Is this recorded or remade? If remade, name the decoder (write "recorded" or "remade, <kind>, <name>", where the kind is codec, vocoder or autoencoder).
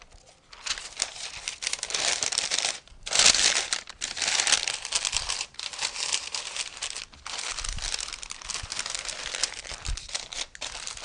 recorded